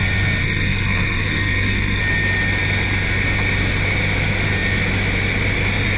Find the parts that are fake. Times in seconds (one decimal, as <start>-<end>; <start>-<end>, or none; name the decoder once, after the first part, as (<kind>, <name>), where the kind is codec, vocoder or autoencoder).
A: 0.4-2.0 (codec, SNAC)